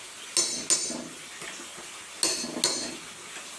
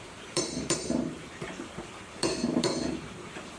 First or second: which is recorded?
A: first